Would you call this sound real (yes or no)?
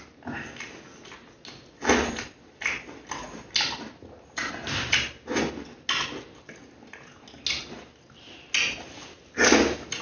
yes